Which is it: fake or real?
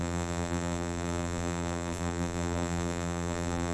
fake